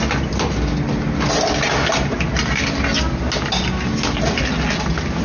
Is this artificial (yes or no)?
no